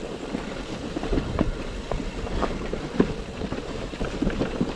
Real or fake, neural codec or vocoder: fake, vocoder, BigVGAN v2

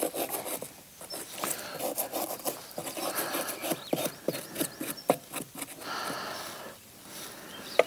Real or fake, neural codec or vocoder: real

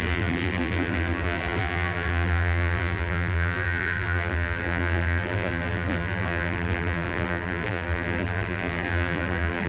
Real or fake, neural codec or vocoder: fake, vocoder, BigVGAN v2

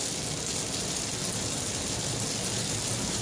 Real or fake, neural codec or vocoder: real